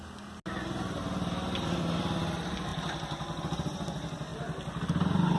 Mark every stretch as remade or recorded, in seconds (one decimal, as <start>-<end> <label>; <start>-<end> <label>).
0.0-5.4 recorded